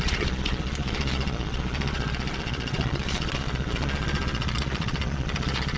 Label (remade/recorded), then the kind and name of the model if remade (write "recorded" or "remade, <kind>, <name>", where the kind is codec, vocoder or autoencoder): remade, vocoder, Vocos